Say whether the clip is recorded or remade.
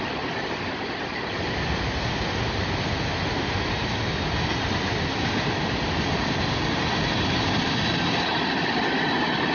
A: recorded